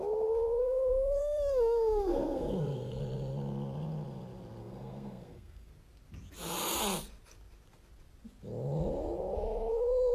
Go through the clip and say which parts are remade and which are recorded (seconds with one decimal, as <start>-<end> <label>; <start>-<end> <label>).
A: 0.0-0.6 recorded; 0.6-3.0 remade; 3.0-4.6 recorded; 4.6-5.7 remade; 5.7-10.1 recorded